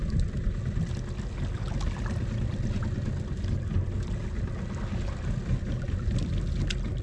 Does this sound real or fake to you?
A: real